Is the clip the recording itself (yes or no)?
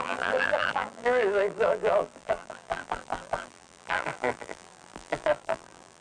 no